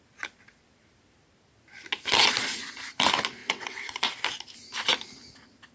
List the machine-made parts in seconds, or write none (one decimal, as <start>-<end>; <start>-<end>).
3.4-4.0

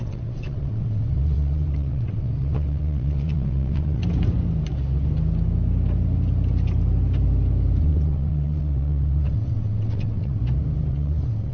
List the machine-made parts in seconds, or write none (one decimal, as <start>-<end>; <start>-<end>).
0.0-4.0; 7.8-10.4; 10.9-11.5

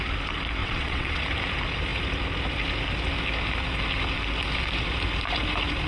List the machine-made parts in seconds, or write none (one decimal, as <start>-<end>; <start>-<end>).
0.6-1.2

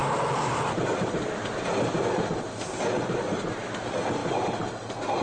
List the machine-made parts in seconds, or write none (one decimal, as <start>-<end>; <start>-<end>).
none

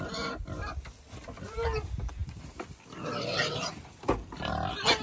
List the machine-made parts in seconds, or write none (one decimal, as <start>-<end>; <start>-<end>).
none

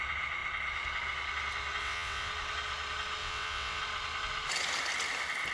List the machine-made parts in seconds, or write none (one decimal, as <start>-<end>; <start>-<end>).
1.8-2.3; 3.2-3.8

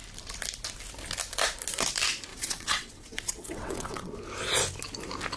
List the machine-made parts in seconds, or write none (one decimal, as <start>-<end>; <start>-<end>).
2.3-4.1